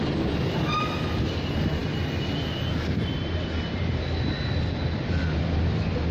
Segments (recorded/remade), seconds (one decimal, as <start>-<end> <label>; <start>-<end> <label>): 0.0-6.1 recorded